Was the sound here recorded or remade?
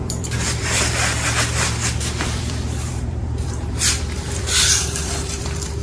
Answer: remade